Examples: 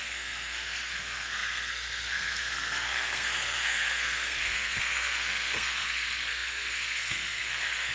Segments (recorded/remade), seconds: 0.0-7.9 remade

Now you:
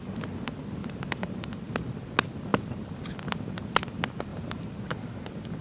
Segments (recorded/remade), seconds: 0.0-0.8 recorded; 0.8-1.5 remade; 1.5-4.3 recorded; 4.3-4.8 remade; 4.8-5.6 recorded

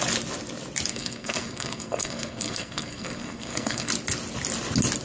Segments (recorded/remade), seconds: 0.0-0.9 recorded; 0.9-3.9 remade; 3.9-5.0 recorded

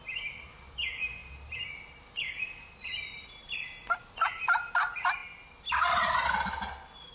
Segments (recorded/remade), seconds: 0.0-2.9 recorded; 2.9-3.5 remade; 3.5-7.1 recorded

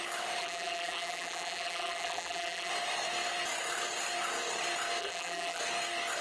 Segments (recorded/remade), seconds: 0.0-0.4 recorded; 0.4-2.7 remade; 2.7-5.0 recorded; 5.0-5.6 remade; 5.6-6.2 recorded

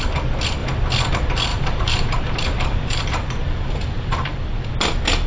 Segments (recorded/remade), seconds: 0.0-1.5 recorded; 1.5-4.7 remade; 4.7-5.3 recorded